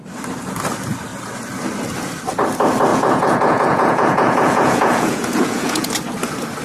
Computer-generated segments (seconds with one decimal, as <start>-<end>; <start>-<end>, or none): 2.9-5.9